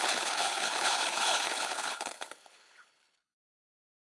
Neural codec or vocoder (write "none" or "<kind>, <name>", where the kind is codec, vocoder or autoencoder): codec, HILCodec